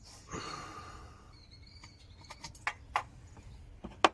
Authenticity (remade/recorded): recorded